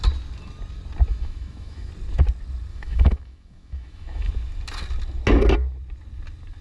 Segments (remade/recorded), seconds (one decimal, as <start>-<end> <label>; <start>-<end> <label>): 0.0-1.1 recorded; 1.1-1.9 remade; 1.9-2.7 recorded; 2.7-4.3 remade; 4.3-6.6 recorded